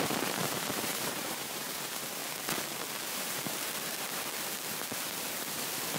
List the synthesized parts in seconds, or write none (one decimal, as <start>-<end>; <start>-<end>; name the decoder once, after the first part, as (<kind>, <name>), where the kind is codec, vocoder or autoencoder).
0.0-2.2 (vocoder, BigVGAN v2)